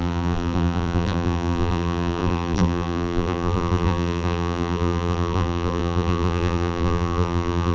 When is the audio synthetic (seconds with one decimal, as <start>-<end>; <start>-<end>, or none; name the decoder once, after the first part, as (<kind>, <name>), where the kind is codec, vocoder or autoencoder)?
0.0-7.7 (vocoder, BigVGAN v2)